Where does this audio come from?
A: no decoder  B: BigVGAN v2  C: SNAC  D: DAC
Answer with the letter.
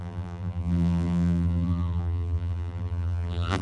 B